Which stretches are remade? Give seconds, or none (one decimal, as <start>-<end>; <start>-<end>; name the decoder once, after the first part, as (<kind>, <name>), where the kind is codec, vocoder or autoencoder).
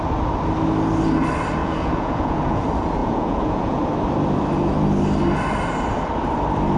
1.6-2.6 (vocoder, Vocos); 3.0-3.8